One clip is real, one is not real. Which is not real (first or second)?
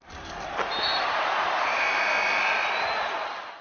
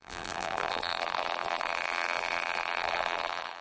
second